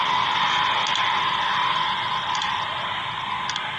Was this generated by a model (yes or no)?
no